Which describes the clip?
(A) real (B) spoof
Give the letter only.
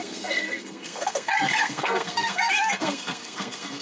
B